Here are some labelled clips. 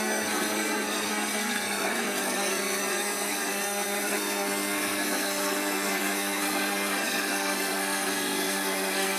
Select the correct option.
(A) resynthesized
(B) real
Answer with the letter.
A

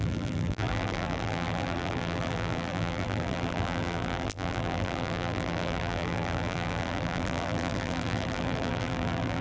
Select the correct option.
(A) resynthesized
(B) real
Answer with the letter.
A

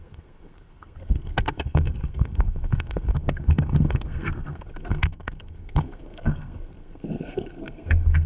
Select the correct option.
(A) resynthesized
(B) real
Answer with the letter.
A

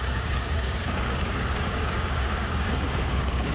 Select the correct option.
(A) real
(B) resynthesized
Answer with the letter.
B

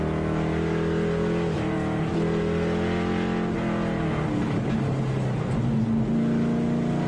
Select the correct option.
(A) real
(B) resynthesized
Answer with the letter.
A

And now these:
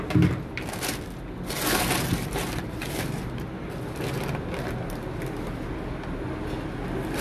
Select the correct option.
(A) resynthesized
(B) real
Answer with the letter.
B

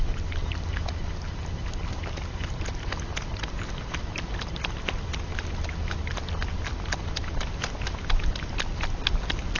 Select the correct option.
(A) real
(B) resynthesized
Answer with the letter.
A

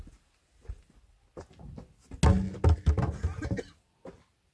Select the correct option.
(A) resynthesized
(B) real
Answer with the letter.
B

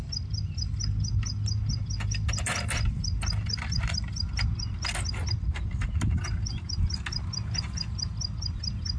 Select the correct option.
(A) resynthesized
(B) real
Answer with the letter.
B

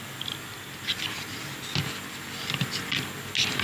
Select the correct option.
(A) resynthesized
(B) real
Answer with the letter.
B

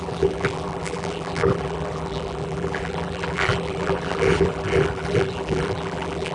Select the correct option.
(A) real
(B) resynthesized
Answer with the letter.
B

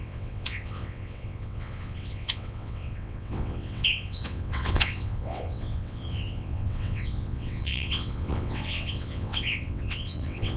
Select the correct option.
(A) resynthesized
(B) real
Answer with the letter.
A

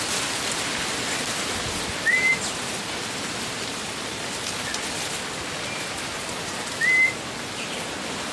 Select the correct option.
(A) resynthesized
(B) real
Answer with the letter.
B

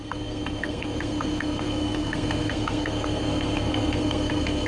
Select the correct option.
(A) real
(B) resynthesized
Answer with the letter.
B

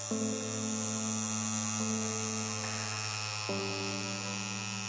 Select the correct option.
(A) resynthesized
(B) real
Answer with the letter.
B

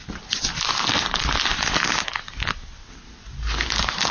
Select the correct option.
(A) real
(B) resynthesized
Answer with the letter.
A